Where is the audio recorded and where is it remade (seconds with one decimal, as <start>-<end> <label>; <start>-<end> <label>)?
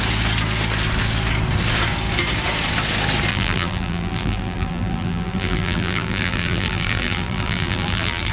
0.0-3.3 recorded; 3.3-8.3 remade